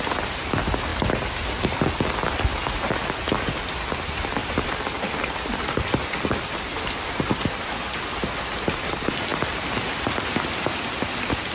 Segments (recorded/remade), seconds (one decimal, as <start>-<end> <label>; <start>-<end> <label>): 0.0-11.5 recorded